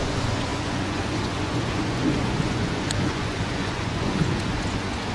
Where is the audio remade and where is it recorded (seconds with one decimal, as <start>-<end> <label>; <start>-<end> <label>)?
0.0-5.1 remade